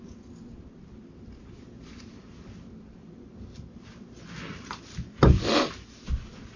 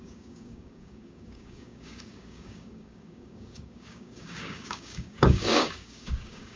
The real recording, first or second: first